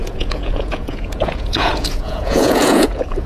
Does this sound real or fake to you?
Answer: fake